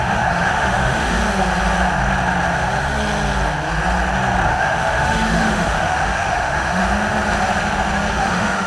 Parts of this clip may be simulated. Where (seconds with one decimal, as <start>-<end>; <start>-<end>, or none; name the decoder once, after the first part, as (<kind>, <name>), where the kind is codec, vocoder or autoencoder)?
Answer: 0.0-1.2 (autoencoder, DAC-VAE); 4.5-6.8; 8.1-8.7